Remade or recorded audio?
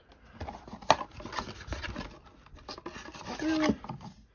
recorded